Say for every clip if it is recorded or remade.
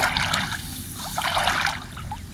recorded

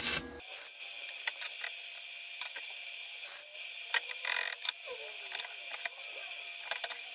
recorded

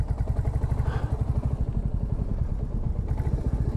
recorded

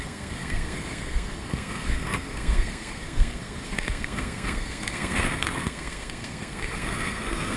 remade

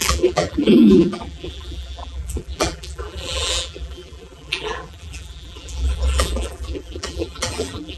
remade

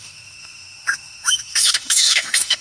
remade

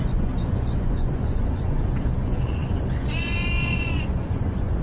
remade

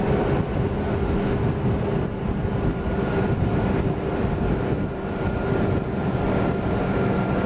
recorded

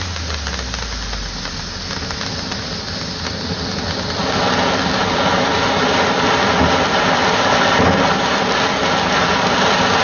recorded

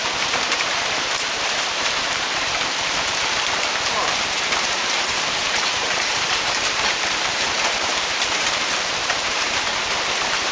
remade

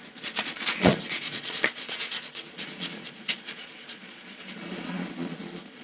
remade